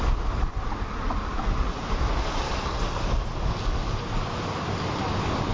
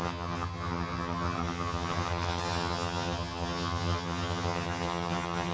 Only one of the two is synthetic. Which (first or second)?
second